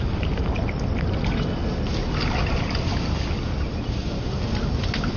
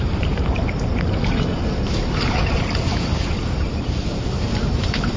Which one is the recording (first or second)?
first